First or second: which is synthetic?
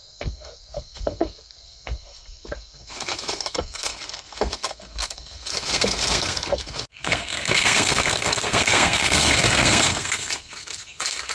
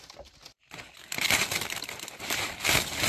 first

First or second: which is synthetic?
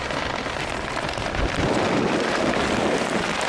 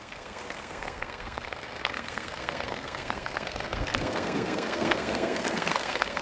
second